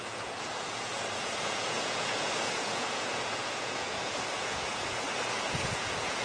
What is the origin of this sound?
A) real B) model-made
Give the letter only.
B